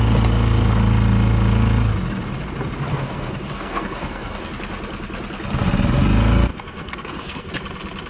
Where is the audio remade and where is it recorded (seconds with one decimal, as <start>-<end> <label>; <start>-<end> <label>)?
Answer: 0.0-2.9 recorded; 2.9-4.5 remade; 4.5-6.5 recorded; 6.5-7.5 remade; 7.5-8.1 recorded